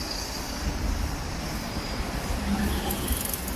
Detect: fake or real fake